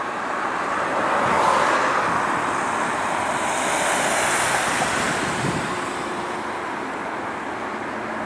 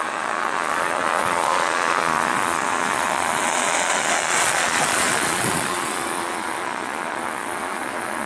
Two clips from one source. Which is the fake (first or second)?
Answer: second